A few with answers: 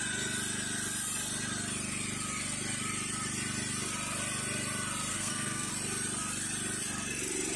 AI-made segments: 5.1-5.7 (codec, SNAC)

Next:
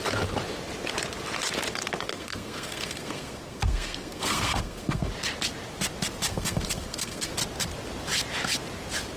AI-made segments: 2.1-5.1 (codec, SNAC); 6.3-7.3

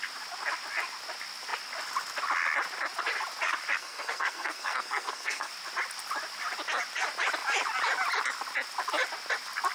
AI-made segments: 3.8-5.5 (codec, SNAC)

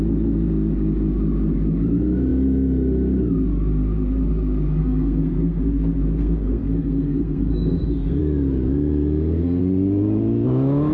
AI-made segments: 4.8-5.7 (codec, SNAC); 6.2-8.2; 8.9-9.6